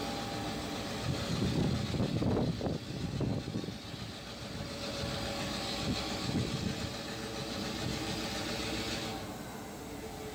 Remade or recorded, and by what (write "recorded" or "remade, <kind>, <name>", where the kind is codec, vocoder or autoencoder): recorded